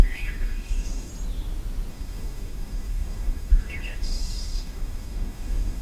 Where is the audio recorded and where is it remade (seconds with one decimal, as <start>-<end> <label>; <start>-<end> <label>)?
0.0-1.1 remade; 1.1-1.9 recorded; 1.9-5.8 remade